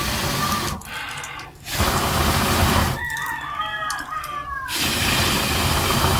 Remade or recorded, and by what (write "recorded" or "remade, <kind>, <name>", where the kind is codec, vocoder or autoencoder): recorded